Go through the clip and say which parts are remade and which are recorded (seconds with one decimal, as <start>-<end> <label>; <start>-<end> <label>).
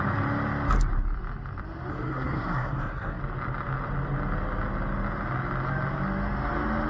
0.0-1.9 recorded; 1.9-3.2 remade; 3.2-6.9 recorded